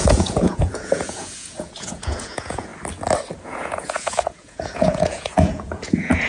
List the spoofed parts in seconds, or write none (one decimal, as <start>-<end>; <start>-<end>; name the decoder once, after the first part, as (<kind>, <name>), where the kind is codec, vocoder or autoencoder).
0.0-2.7 (vocoder, Vocos); 3.4-6.3